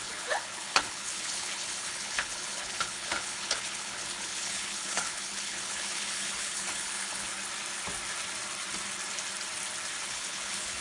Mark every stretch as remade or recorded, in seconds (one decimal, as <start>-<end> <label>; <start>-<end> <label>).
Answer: 0.0-7.3 remade; 7.3-10.1 recorded; 10.1-10.8 remade